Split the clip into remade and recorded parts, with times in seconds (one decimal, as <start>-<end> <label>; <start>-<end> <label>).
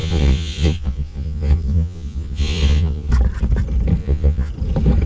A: 0.0-3.1 remade; 3.1-4.0 recorded; 4.0-4.5 remade; 4.5-5.1 recorded